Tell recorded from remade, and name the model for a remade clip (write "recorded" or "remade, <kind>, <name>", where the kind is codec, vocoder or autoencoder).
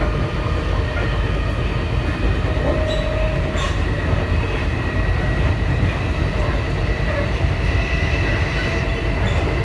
recorded